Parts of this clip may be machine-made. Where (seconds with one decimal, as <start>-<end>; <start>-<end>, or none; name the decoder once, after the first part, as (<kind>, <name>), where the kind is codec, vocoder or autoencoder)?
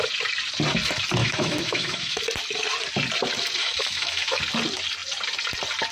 1.2-2.2 (autoencoder, DAC-VAE); 3.6-4.4